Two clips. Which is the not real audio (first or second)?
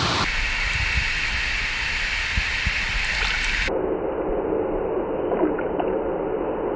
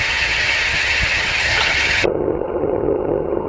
second